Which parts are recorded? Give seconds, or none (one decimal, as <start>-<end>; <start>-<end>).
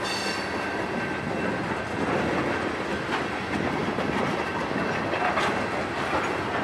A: 0.0-3.8; 4.8-6.6